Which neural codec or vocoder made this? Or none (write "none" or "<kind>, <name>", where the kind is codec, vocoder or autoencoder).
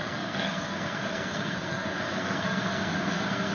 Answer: codec, SNAC